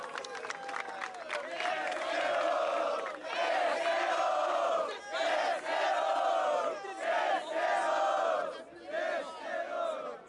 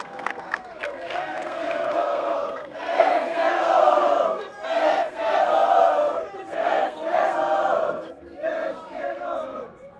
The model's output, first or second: second